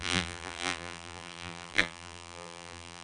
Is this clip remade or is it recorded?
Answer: remade